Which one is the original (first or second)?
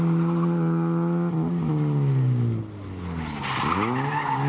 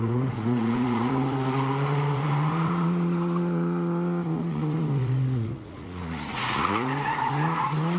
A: first